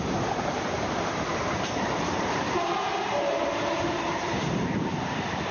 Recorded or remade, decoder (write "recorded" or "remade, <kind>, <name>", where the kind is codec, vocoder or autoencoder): remade, vocoder, BigVGAN v2